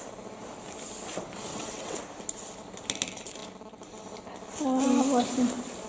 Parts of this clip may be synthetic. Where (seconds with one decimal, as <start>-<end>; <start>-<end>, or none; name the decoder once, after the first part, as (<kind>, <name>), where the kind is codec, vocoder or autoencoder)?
1.5-2.0 (vocoder, WaveNeXt)